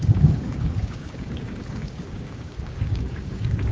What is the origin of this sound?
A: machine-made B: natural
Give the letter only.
A